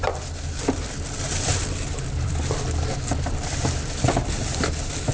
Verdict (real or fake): fake